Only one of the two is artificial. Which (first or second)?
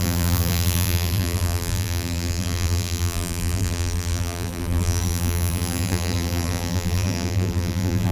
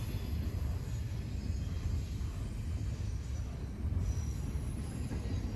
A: first